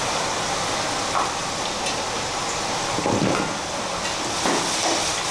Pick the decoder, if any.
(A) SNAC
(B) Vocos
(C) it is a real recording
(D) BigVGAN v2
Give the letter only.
C